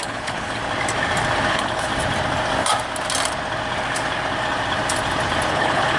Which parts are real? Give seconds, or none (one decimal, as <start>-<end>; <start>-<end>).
0.6-1.5; 1.9-5.5